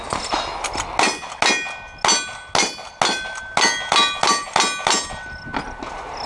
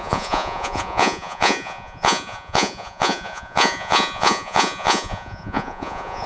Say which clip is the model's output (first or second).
second